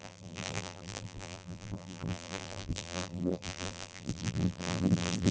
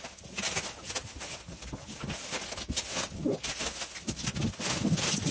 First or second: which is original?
second